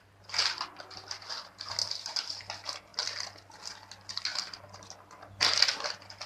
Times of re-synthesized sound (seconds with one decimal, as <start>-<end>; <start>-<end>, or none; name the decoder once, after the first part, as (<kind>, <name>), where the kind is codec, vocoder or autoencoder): 1.8-2.4 (vocoder, BigVGAN v2)